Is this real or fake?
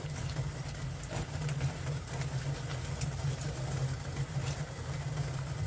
real